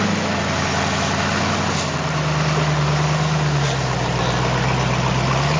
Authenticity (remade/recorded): recorded